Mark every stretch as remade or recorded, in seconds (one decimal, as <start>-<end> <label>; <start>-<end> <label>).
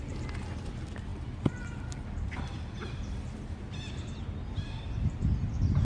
0.0-5.8 recorded